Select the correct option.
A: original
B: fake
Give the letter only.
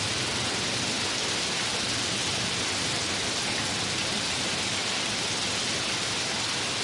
B